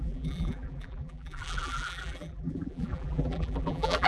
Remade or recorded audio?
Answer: remade